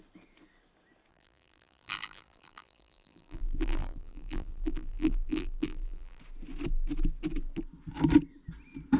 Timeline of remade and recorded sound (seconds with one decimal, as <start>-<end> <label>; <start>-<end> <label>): 0.0-1.1 recorded; 1.1-6.2 remade; 6.2-9.0 recorded